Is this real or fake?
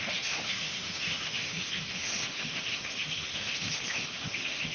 fake